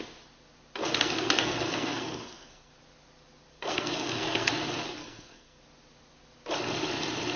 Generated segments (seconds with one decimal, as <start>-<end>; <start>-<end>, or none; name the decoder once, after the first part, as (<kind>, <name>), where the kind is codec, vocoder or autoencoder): 0.8-2.7 (codec, SNAC); 3.5-4.5; 5.0-5.6